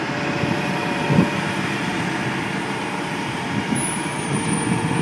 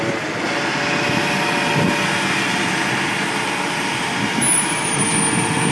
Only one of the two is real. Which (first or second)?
second